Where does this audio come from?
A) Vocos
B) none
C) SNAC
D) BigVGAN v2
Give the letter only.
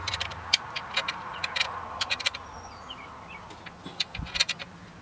D